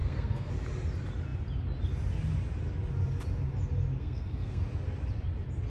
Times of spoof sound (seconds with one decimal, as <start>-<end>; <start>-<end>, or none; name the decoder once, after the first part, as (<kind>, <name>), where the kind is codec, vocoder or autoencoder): 0.0-0.5 (codec, SNAC); 4.0-4.6